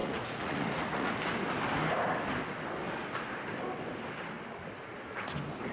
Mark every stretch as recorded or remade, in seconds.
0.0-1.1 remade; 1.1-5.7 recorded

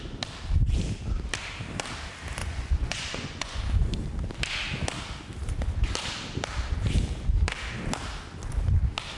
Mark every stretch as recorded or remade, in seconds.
0.0-2.4 recorded; 2.4-3.6 remade; 3.6-9.2 recorded

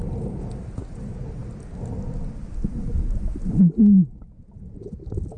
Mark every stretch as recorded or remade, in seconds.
0.0-5.4 recorded

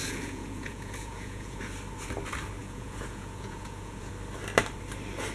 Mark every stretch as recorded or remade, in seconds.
0.0-1.6 remade; 1.6-2.6 recorded; 2.6-4.1 remade; 4.1-5.3 recorded

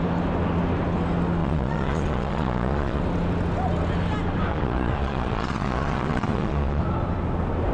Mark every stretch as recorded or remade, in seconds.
0.0-1.4 recorded; 1.4-3.0 remade; 3.0-4.5 recorded; 4.5-6.8 remade; 6.8-7.7 recorded

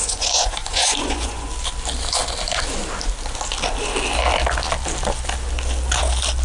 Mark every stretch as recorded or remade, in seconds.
0.0-1.5 remade; 1.5-6.4 recorded

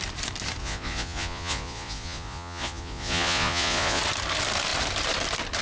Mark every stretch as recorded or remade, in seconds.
0.0-0.6 recorded; 0.6-4.0 remade; 4.0-5.6 recorded

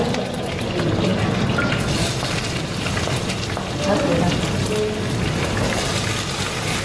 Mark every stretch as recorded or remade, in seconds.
0.0-6.8 recorded